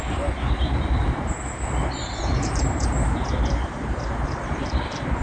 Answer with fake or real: fake